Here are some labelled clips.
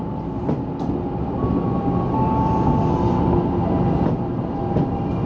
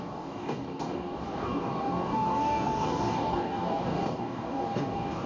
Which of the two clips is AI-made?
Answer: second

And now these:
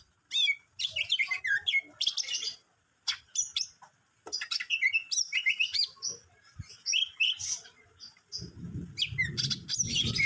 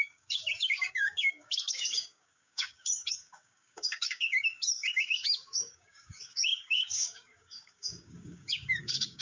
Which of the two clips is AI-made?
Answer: second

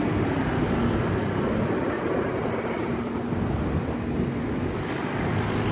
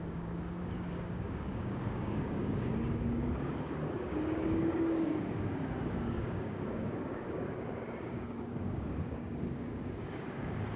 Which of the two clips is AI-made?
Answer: second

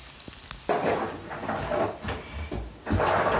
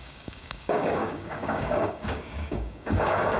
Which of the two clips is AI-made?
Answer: second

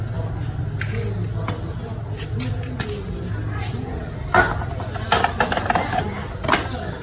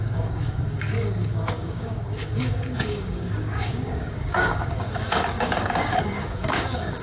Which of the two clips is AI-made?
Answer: second